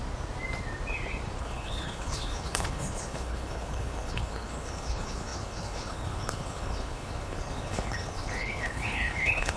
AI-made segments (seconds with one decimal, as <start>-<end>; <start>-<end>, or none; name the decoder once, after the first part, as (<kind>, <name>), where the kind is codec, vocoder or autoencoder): 1.4-9.6 (codec, HILCodec)